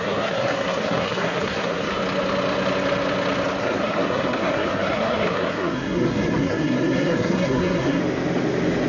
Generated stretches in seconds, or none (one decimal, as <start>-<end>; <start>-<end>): 0.0-2.0; 3.6-8.0